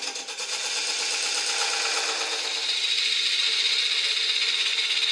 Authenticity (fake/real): real